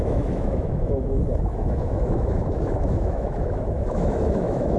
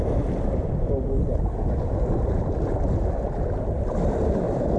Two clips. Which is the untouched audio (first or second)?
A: second